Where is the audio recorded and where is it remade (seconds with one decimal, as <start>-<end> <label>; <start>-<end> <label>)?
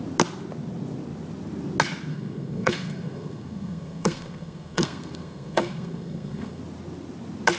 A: 0.0-2.1 recorded; 2.1-6.6 remade; 6.6-7.6 recorded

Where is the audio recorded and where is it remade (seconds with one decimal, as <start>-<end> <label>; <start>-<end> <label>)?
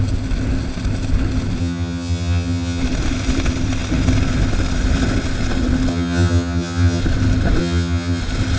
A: 0.0-1.6 recorded; 1.6-2.8 remade; 2.8-5.9 recorded; 5.9-7.0 remade; 7.0-7.6 recorded; 7.6-8.2 remade; 8.2-8.6 recorded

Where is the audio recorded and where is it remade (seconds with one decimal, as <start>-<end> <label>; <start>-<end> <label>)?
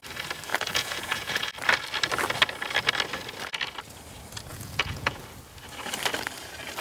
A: 0.0-0.5 recorded; 0.5-1.5 remade; 1.5-4.5 recorded; 4.5-5.2 remade; 5.2-6.8 recorded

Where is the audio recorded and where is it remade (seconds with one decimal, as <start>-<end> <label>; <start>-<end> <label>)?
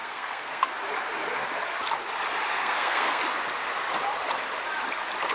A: 0.0-0.7 remade; 0.7-2.5 recorded; 2.5-3.2 remade; 3.2-5.3 recorded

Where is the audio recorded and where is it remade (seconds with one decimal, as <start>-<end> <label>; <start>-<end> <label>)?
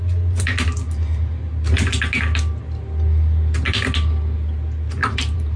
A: 0.0-5.0 recorded; 5.0-5.6 remade